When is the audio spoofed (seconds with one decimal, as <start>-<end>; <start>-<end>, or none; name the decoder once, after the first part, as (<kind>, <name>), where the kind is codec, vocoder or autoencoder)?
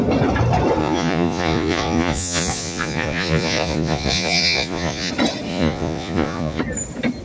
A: 0.8-5.1 (vocoder, Vocos); 5.5-6.6